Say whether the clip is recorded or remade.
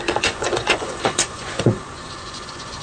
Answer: remade